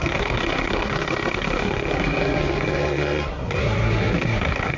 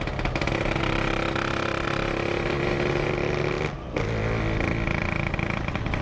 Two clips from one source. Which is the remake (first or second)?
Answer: first